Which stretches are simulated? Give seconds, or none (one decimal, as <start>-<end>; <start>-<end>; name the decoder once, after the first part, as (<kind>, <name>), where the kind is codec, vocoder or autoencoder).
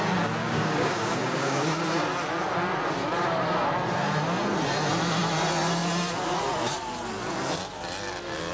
0.4-1.8 (codec, DAC)